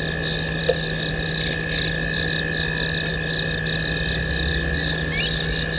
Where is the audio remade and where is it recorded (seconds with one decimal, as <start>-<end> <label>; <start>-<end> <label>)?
0.0-5.8 recorded